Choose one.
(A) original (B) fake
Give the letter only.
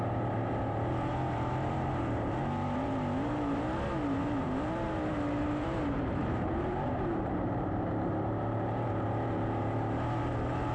B